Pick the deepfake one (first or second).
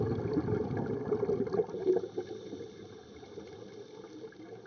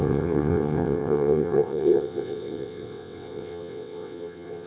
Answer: second